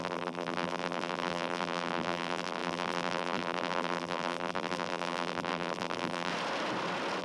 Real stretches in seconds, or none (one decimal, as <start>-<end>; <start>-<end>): 6.3-7.2

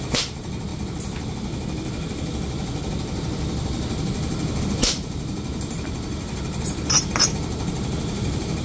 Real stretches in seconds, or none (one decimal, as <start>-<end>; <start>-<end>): 0.7-4.6

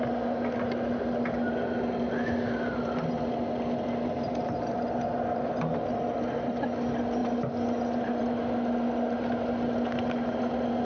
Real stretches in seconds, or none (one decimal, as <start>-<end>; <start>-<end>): 0.0-10.8

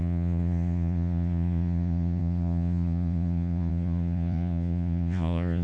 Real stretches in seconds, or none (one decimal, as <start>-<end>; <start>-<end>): none